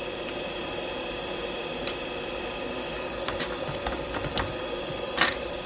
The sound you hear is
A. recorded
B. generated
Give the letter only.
B